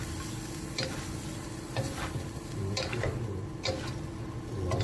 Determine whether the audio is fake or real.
real